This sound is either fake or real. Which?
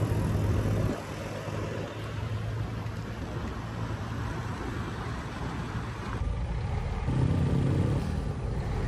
real